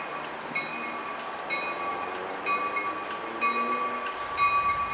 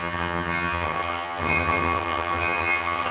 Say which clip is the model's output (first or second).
second